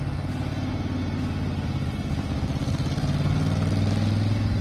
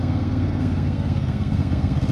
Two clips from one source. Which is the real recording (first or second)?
first